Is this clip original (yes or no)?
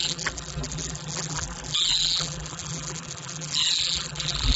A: no